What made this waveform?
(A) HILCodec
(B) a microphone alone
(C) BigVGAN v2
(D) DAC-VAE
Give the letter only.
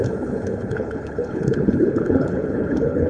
A